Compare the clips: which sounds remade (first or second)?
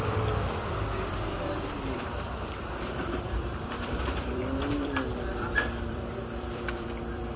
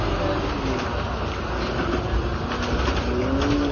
first